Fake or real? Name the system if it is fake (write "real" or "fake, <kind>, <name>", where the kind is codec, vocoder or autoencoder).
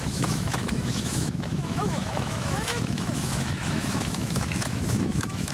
fake, autoencoder, DAC-VAE